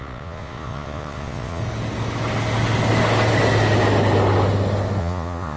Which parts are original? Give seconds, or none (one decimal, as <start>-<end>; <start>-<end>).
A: 1.6-5.0